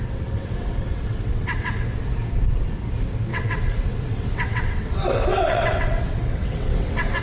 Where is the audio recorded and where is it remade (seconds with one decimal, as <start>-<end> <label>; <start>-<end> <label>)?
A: 0.0-1.7 remade; 1.7-3.3 recorded; 3.3-7.2 remade